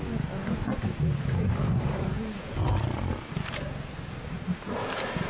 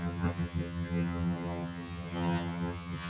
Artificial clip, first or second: second